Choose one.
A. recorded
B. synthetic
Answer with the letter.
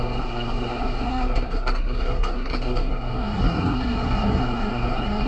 B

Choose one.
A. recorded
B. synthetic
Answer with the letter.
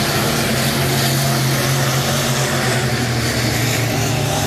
A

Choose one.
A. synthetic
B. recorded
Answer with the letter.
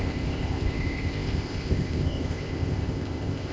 A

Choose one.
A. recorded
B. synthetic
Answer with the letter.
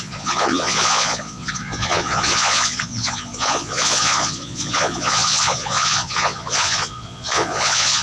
B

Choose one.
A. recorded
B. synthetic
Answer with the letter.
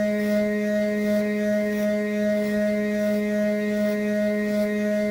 B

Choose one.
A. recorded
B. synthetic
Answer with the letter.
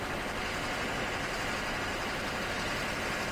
B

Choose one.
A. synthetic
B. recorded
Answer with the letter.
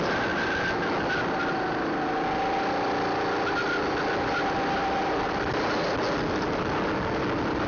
B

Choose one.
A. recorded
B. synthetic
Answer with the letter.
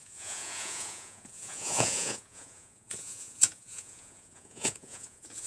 B